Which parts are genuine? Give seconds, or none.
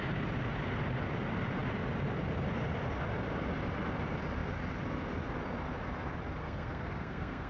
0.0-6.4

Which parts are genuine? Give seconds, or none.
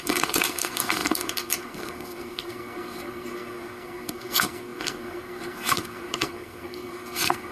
none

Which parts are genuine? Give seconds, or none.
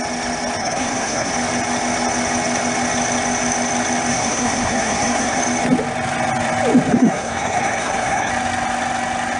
0.0-0.6; 1.3-4.1; 5.4-6.9; 8.3-9.4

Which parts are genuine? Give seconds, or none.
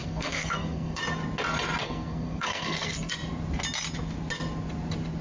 1.0-1.8; 3.1-5.2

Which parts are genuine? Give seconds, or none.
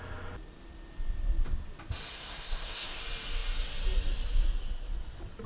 0.0-2.1; 3.0-5.5